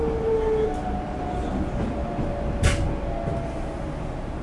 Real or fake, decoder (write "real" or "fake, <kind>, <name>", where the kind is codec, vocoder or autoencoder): real